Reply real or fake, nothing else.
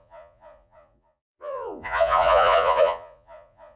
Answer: fake